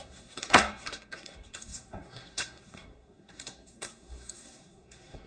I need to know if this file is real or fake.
fake